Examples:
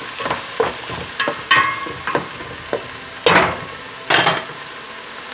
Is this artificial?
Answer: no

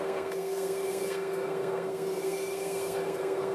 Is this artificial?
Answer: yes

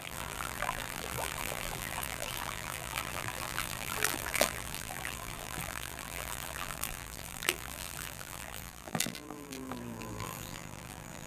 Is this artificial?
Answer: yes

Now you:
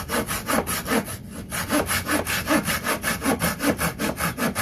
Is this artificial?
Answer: no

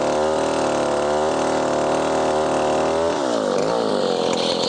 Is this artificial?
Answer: no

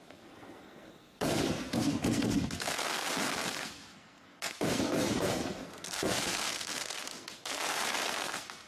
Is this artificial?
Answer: yes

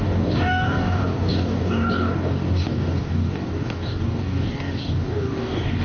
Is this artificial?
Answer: yes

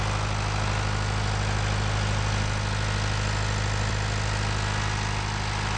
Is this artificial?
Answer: no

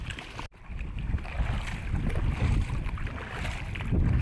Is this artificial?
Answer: no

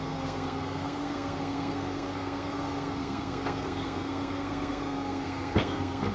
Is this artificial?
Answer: yes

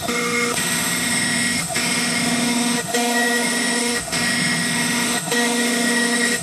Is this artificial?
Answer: yes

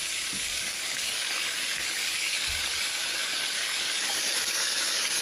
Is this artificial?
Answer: yes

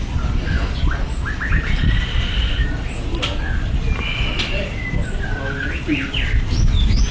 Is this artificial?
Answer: no